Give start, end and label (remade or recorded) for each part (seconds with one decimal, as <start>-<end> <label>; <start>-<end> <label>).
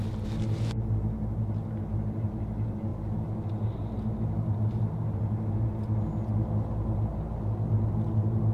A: 0.0-8.5 recorded